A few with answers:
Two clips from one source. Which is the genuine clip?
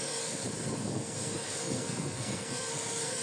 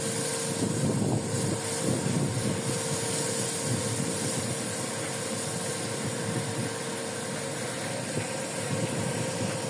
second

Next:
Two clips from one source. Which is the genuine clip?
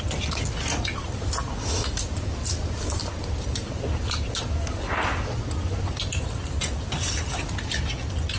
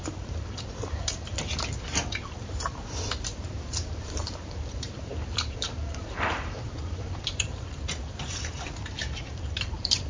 first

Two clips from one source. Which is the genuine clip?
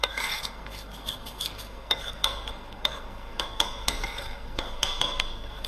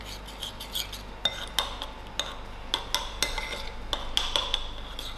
second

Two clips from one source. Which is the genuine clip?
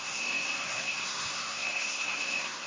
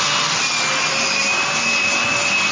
second